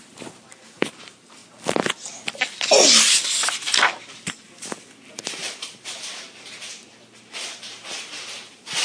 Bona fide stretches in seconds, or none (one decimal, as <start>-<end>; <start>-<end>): 1.4-5.1